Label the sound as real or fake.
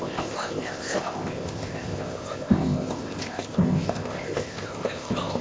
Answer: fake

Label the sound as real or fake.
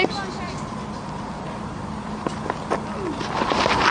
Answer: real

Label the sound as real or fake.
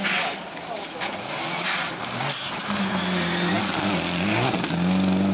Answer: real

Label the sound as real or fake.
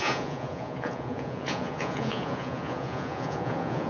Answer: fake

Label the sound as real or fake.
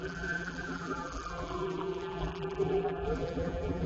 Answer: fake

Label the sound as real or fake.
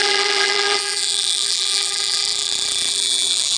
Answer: fake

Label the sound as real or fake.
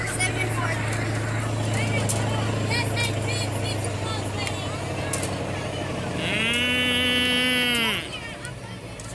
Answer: real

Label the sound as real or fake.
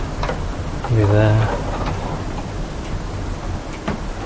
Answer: real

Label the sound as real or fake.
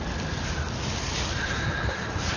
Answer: real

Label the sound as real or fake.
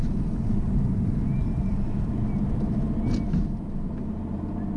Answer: real